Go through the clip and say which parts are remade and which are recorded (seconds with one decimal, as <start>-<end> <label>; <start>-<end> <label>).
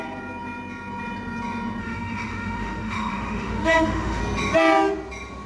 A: 0.0-1.8 recorded; 1.8-4.2 remade; 4.2-5.5 recorded